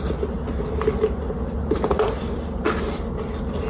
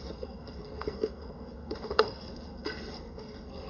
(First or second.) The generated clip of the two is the second